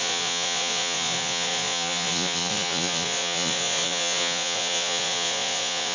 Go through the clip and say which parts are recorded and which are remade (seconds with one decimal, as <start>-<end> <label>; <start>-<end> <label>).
0.0-5.9 remade